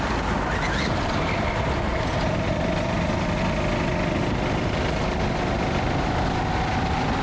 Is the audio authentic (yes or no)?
yes